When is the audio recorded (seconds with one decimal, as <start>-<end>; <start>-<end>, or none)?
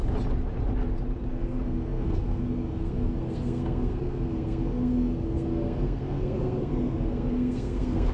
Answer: 0.0-1.3